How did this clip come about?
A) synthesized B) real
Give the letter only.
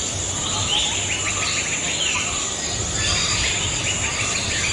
B